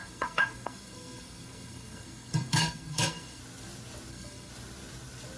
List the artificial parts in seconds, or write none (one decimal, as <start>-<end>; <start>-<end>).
0.0-3.4; 4.1-4.5